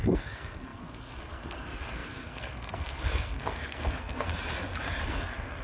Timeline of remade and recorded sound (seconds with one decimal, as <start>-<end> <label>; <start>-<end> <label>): 0.0-4.3 remade; 4.3-5.1 recorded; 5.1-5.6 remade